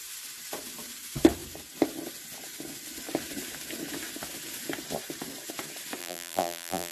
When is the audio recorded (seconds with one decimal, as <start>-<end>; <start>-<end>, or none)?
0.0-6.0